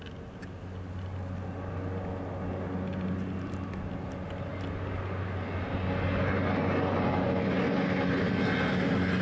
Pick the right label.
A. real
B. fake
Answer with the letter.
A